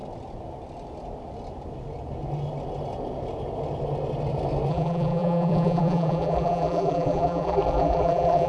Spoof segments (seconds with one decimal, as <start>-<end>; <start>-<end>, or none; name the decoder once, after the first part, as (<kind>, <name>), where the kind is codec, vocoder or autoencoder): 4.7-8.5 (vocoder, BigVGAN v2)